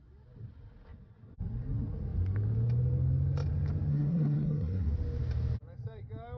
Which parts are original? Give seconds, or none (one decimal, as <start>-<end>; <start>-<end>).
0.0-3.9; 4.9-6.4